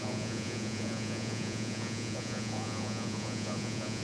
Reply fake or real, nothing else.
fake